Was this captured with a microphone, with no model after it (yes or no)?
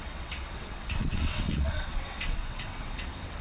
no